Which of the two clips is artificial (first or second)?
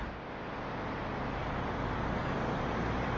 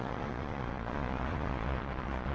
second